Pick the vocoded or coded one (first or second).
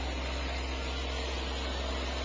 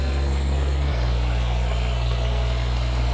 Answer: second